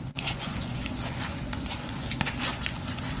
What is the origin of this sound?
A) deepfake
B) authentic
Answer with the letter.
A